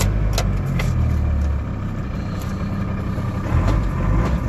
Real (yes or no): yes